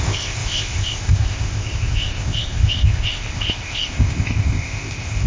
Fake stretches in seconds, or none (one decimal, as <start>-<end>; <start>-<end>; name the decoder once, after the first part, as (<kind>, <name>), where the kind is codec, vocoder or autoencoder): 0.0-5.3 (codec, ZipCodec)